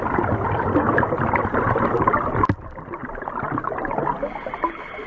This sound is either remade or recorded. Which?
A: recorded